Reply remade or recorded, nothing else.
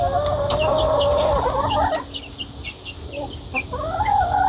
recorded